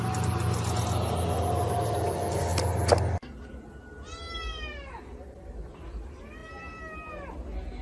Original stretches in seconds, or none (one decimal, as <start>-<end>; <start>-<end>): 0.0-7.8